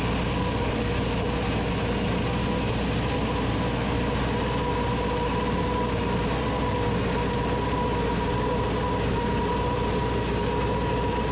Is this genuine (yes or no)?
yes